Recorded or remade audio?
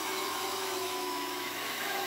remade